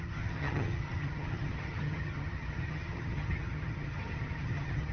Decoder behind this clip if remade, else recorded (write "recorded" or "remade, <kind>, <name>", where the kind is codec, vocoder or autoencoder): remade, vocoder, HiFi-GAN